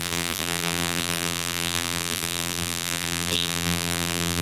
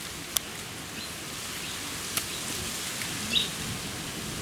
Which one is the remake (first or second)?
first